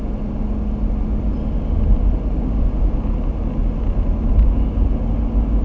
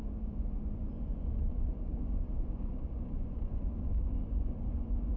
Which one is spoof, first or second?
second